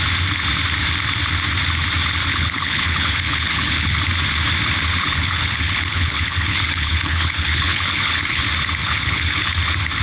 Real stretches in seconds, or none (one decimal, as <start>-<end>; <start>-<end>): 0.0-2.3; 4.0-5.0; 8.4-8.8; 9.6-10.0